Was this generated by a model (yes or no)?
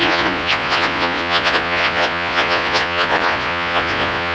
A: yes